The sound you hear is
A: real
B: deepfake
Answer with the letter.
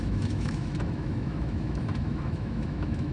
B